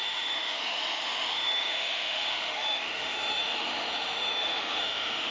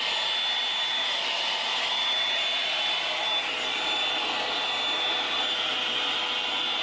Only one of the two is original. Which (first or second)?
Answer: second